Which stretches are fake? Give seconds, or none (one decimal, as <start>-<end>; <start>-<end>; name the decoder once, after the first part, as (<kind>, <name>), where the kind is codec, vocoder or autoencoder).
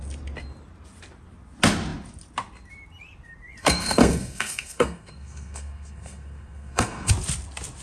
3.6-7.1 (codec, SNAC)